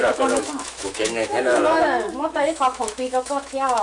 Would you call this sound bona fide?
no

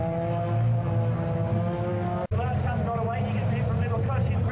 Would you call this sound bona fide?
yes